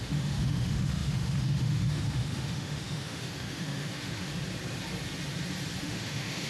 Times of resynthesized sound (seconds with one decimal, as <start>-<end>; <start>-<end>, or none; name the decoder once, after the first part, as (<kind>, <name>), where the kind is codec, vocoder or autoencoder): 0.0-4.3 (autoencoder, DAC-VAE); 5.8-6.5